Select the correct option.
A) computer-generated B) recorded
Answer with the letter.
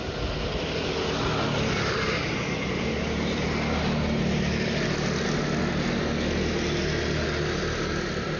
B